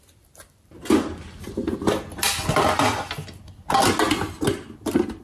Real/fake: real